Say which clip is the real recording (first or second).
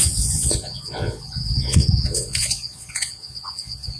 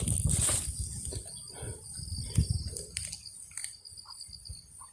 second